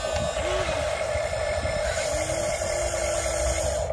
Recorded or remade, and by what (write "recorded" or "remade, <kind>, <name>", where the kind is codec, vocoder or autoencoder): recorded